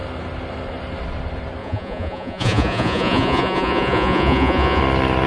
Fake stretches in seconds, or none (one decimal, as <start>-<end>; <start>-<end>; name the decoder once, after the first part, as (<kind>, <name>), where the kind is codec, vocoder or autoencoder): 1.6-4.8 (vocoder, Vocos)